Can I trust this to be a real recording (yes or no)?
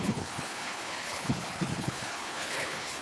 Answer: no